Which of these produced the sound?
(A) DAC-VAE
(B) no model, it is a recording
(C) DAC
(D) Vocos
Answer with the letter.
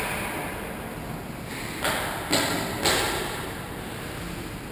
B